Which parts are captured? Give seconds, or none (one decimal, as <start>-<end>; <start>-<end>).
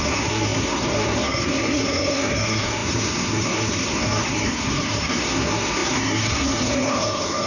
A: none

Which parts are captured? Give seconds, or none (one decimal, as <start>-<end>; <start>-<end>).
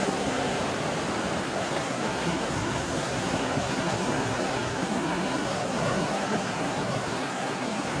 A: 0.6-1.4